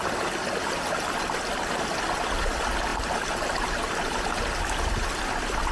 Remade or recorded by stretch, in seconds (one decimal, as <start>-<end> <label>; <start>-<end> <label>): 0.0-5.7 recorded